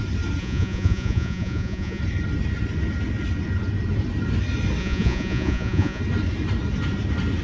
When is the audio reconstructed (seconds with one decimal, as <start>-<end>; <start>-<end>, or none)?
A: 0.4-2.0; 4.8-6.0